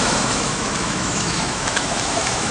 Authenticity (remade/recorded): remade